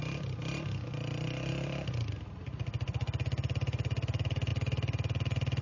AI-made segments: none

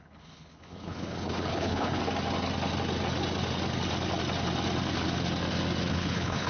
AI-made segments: 0.0-2.0 (codec, HILCodec); 5.9-6.5

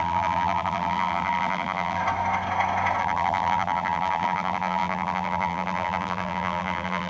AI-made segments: 0.0-2.0 (vocoder, BigVGAN v2); 3.0-7.1

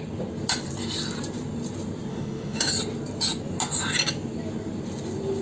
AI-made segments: 2.1-2.7 (autoencoder, DAC-VAE)

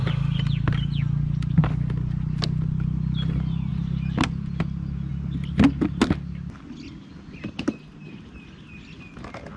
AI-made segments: none